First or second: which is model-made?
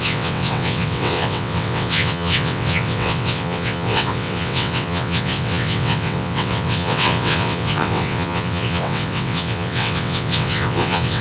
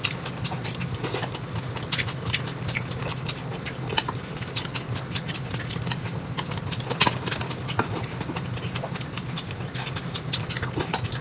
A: first